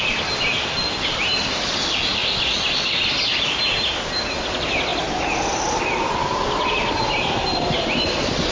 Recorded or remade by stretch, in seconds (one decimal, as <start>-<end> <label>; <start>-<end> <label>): 0.0-8.5 recorded